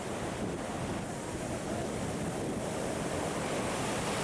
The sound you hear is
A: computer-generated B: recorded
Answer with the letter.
B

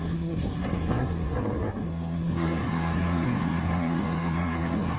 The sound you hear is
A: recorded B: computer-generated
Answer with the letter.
B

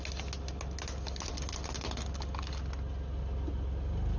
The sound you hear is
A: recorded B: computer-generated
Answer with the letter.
A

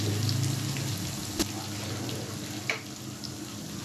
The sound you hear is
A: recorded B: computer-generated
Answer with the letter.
A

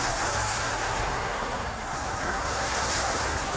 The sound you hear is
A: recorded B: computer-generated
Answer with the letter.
B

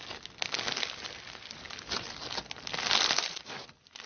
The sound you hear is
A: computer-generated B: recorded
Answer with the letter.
B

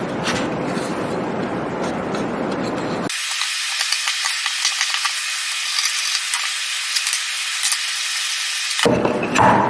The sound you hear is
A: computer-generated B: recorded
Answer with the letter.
B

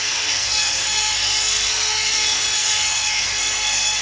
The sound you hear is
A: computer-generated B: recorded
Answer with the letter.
A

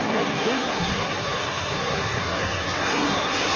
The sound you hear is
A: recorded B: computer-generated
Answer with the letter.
B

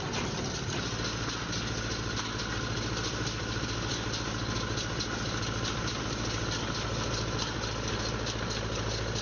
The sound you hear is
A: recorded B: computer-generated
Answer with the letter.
A